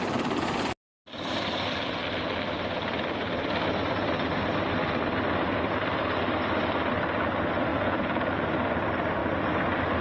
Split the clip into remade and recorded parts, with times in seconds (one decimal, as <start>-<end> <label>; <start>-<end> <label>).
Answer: 0.0-7.7 recorded; 7.7-8.4 remade; 8.4-10.0 recorded

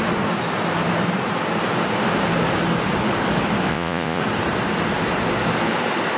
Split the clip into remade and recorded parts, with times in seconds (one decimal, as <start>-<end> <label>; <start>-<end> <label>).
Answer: 0.0-3.7 recorded; 3.7-4.2 remade; 4.2-6.2 recorded